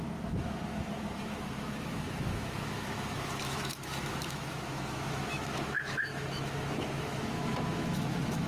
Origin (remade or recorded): remade